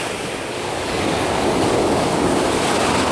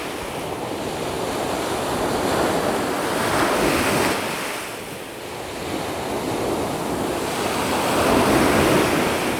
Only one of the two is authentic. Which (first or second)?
second